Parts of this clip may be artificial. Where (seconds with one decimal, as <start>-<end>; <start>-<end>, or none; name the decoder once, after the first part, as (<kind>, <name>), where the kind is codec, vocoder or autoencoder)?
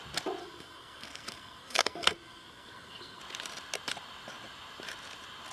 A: 0.4-3.2 (codec, SNAC)